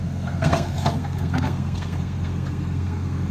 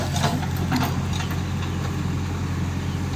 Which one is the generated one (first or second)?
first